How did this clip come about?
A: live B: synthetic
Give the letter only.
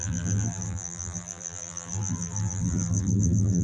B